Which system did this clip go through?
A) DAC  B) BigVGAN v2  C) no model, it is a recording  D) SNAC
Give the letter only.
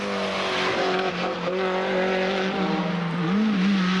C